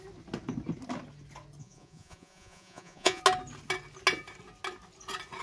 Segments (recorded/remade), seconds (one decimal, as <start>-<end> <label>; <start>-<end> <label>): 0.0-1.6 recorded; 1.6-3.2 remade; 3.2-5.4 recorded